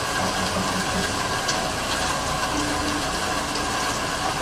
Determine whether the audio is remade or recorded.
recorded